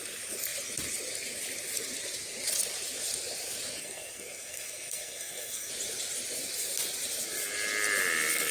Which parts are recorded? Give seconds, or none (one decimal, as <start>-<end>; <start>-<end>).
0.0-3.8; 5.7-8.5